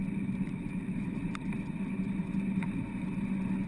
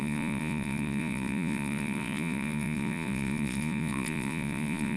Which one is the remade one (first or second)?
second